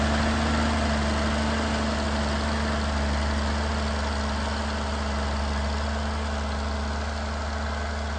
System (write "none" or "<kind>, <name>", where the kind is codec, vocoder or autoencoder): none